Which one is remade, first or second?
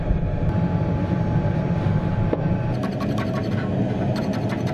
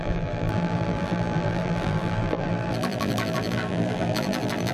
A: second